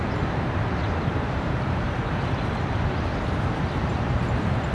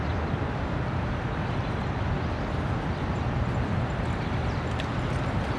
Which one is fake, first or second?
first